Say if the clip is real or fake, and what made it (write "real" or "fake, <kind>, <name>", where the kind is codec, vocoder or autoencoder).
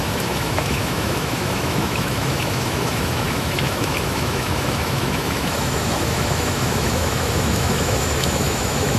fake, autoencoder, DAC-VAE